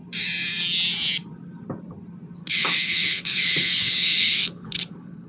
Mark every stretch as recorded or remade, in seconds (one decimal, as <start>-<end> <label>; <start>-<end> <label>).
0.0-2.4 recorded; 2.4-5.3 remade